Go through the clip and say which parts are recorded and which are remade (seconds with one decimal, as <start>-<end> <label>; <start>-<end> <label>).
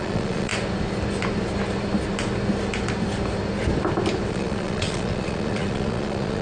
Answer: 0.0-0.5 remade; 0.5-4.3 recorded; 4.3-6.4 remade